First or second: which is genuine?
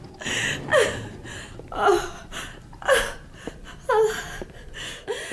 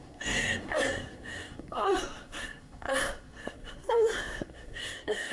first